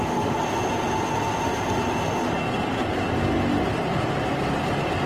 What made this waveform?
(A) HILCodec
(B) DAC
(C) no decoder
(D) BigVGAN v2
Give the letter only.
C